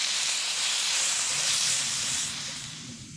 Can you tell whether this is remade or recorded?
remade